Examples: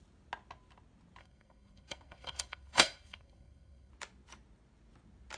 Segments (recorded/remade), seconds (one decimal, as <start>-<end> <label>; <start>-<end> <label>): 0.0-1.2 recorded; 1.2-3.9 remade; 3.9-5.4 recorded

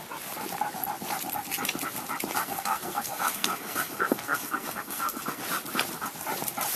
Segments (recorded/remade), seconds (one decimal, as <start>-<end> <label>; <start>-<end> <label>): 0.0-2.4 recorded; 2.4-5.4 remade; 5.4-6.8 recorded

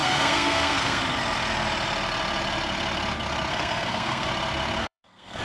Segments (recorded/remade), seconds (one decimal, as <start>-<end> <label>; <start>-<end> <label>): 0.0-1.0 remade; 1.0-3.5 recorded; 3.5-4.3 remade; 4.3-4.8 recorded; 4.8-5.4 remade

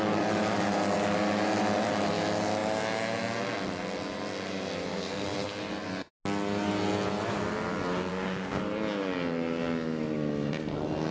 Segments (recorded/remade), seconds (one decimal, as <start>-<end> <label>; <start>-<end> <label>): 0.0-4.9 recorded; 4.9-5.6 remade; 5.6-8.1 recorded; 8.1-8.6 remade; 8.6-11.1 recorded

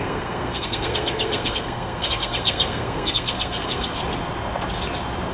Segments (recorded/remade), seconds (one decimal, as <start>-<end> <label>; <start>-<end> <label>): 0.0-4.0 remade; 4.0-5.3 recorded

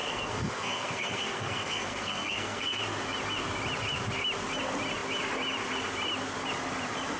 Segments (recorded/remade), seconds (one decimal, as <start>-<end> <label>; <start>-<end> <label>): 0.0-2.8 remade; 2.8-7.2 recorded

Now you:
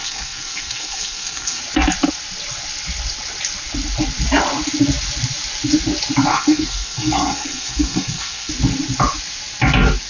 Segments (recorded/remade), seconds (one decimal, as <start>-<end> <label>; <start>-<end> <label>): 0.0-1.6 remade; 1.6-6.3 recorded; 6.3-8.5 remade; 8.5-10.1 recorded